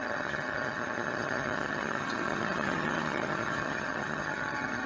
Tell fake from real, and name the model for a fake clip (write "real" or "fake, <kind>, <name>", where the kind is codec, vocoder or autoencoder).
fake, vocoder, HiFi-GAN